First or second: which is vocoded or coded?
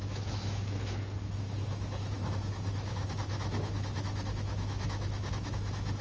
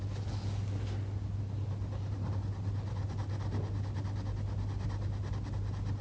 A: first